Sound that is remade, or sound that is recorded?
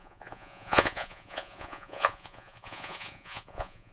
remade